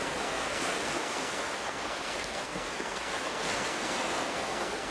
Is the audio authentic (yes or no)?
no